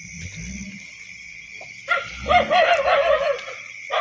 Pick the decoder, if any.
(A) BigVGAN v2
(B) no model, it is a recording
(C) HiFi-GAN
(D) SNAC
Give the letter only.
B